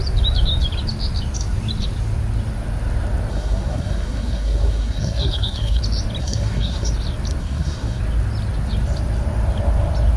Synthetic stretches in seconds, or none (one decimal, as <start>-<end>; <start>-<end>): 3.3-5.8; 6.2-6.9; 7.4-8.0